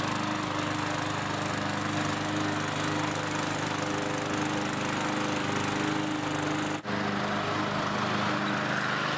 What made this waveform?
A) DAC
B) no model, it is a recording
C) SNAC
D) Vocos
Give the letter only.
B